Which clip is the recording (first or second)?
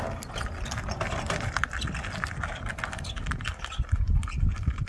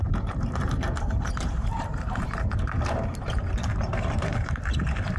first